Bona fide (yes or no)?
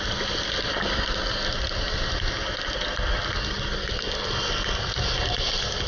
yes